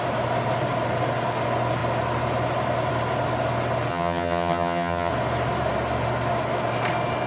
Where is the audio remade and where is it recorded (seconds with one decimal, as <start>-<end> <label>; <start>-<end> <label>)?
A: 0.0-3.9 recorded; 3.9-5.1 remade; 5.1-7.3 recorded